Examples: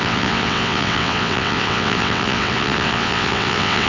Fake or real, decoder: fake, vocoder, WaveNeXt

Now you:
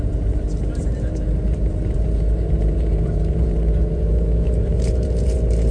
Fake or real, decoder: fake, vocoder, BigVGAN v2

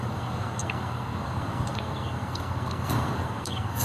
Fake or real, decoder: fake, codec, SNAC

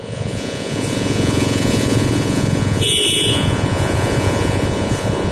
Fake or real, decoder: fake, vocoder, Vocos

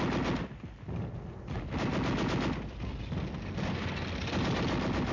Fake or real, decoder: real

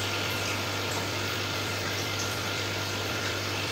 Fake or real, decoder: fake, vocoder, BigVGAN v2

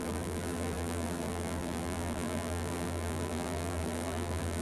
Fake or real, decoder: fake, vocoder, BigVGAN v2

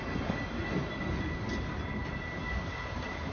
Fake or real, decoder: real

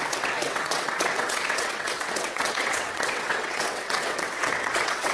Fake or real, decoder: fake, vocoder, WaveNeXt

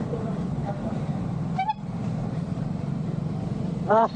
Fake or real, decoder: fake, vocoder, BigVGAN v2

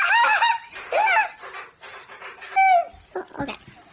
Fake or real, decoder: real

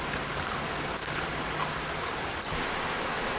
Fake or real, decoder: real